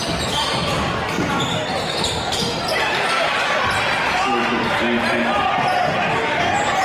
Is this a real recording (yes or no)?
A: yes